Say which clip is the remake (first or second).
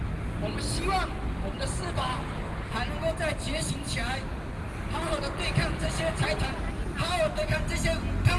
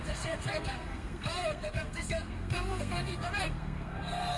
second